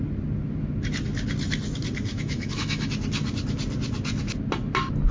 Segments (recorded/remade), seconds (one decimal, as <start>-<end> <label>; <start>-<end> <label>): 0.0-2.1 recorded; 2.1-2.9 remade; 2.9-5.1 recorded

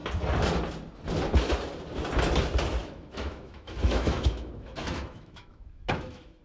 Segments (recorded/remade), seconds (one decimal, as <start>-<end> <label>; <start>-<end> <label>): 0.0-2.8 recorded; 2.8-6.4 remade

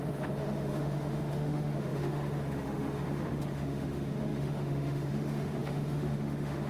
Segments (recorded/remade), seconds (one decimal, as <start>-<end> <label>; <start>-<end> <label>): 0.0-6.7 remade

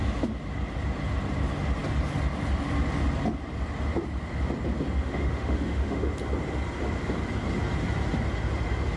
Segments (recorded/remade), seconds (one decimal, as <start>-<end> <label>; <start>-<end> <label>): 0.0-5.0 recorded; 5.0-6.1 remade; 6.1-9.0 recorded

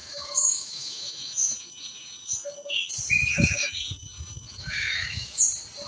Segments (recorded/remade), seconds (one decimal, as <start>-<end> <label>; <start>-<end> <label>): 0.0-2.9 remade; 2.9-3.3 recorded; 3.3-5.4 remade; 5.4-5.9 recorded

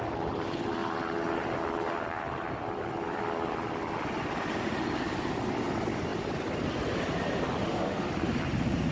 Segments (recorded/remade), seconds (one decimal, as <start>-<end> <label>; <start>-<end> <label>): 0.0-7.6 recorded; 7.6-8.1 remade; 8.1-8.9 recorded

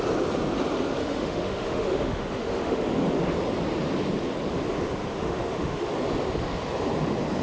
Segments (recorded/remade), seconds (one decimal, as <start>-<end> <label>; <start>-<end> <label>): 0.0-1.0 recorded; 1.0-2.8 remade; 2.8-5.0 recorded; 5.0-5.9 remade; 5.9-7.4 recorded

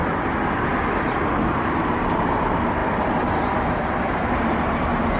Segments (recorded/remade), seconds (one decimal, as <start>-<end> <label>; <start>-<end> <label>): 0.0-5.2 recorded